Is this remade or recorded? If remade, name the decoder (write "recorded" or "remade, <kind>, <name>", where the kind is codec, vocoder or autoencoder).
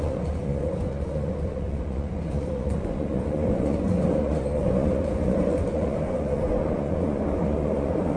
remade, vocoder, Vocos